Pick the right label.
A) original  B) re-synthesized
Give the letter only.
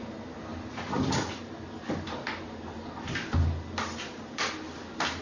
A